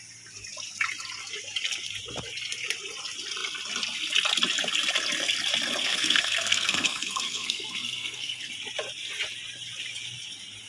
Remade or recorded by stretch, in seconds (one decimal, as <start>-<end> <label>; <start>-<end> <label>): 0.0-5.8 recorded; 5.8-8.5 remade; 8.5-10.7 recorded